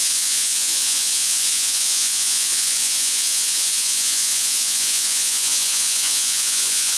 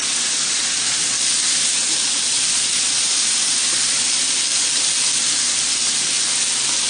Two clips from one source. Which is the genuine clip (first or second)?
second